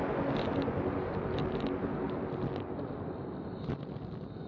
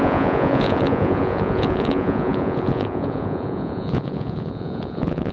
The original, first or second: first